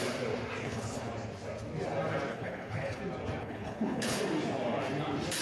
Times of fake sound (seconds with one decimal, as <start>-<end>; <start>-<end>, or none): 0.6-1.1; 2.3-3.0; 3.4-4.2